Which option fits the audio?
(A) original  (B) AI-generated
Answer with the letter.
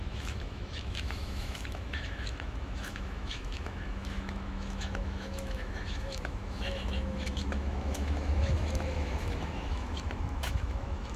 B